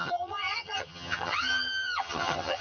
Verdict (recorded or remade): remade